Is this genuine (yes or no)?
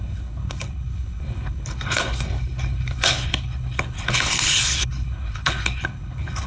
no